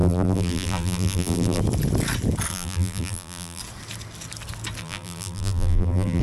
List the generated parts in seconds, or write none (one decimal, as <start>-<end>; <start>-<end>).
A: 0.0-1.6; 2.5-3.6; 4.8-6.2

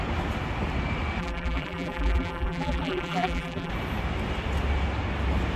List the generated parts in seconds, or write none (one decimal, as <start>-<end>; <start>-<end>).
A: 1.2-3.7

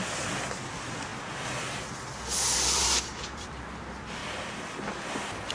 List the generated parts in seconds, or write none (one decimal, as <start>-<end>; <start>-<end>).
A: 0.0-1.1; 1.8-4.2

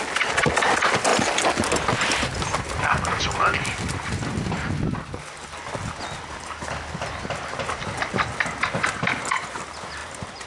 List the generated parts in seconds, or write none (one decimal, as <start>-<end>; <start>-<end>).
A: 10.0-10.5

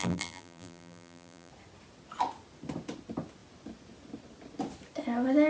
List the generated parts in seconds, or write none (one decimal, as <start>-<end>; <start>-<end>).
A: 0.0-1.5